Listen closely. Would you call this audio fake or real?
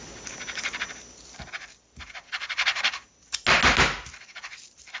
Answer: real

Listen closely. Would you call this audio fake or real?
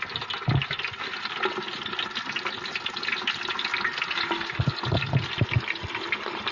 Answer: real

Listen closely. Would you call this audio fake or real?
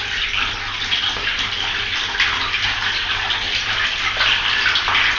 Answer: real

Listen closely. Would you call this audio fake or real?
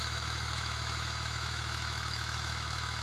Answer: fake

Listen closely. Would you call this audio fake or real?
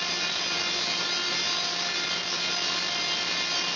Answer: real